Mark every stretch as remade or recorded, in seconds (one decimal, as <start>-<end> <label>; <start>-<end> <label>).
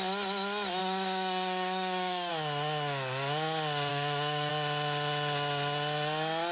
0.0-0.8 recorded; 0.8-2.3 remade; 2.3-3.9 recorded; 3.9-4.5 remade; 4.5-6.5 recorded